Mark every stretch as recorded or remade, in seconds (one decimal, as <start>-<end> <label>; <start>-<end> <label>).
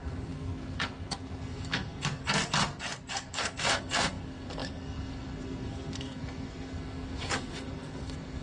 0.0-2.4 remade; 2.4-3.1 recorded; 3.1-8.4 remade